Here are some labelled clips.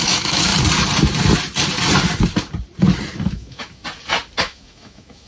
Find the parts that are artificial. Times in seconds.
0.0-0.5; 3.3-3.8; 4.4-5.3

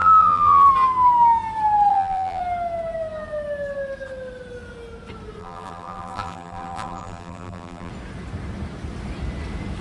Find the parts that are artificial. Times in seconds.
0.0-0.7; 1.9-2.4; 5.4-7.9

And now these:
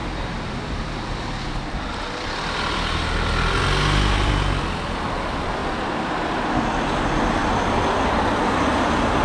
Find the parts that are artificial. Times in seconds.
none